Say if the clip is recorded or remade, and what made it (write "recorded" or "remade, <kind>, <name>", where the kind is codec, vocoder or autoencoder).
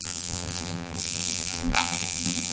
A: remade, vocoder, BigVGAN v2